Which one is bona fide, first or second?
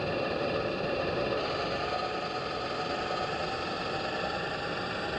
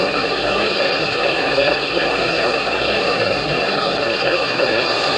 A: first